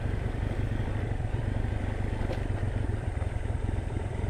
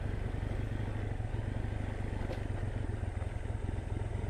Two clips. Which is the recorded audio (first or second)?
second